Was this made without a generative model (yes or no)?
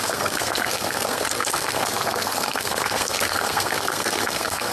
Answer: no